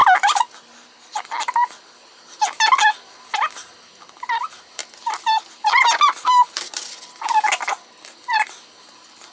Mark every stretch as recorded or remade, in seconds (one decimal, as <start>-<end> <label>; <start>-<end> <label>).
0.0-9.3 recorded